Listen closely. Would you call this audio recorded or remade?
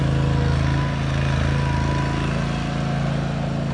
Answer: recorded